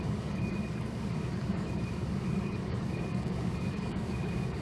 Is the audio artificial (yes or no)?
yes